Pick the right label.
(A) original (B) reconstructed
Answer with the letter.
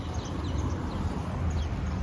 B